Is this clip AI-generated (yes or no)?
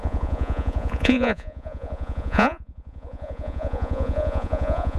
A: yes